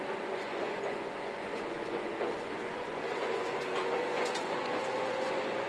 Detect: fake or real fake